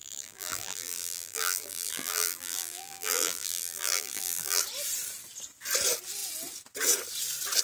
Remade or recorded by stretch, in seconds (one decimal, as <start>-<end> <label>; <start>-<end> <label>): 0.0-4.6 remade; 4.6-7.6 recorded

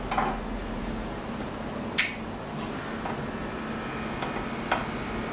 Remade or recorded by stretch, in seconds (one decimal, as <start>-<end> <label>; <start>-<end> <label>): 0.0-0.6 recorded; 0.6-2.1 remade; 2.1-5.3 recorded

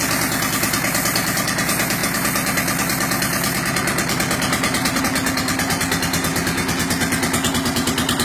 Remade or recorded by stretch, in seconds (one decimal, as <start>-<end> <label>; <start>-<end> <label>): 0.0-8.2 recorded

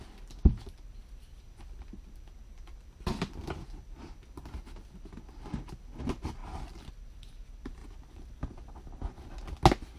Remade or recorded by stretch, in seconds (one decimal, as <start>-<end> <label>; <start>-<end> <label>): 0.0-1.0 recorded; 1.0-4.4 remade; 4.4-10.0 recorded